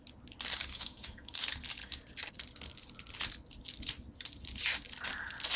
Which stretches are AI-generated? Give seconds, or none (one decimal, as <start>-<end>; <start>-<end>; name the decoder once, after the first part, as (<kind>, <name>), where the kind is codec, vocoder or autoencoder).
0.7-1.4 (autoencoder, DAC-VAE)